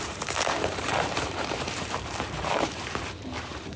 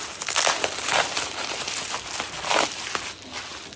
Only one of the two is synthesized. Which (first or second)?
first